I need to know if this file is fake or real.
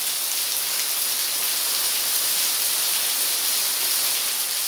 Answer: real